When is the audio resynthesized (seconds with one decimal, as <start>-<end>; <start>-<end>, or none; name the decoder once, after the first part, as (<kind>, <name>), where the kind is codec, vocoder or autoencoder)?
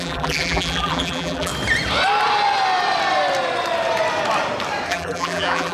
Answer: 0.0-1.5 (vocoder, BigVGAN v2); 4.9-5.7